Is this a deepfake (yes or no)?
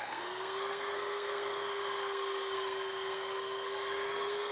yes